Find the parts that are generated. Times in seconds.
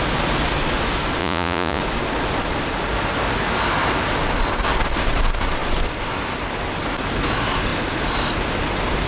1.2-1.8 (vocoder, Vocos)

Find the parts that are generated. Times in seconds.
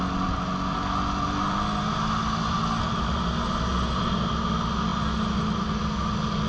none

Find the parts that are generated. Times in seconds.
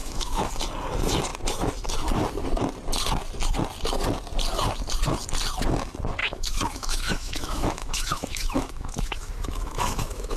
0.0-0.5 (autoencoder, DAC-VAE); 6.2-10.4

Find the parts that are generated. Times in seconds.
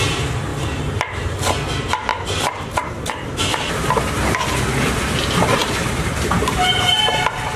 2.1-3.4 (vocoder, BigVGAN v2); 5.6-7.0